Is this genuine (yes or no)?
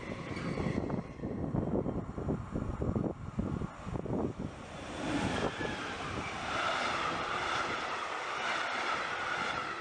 yes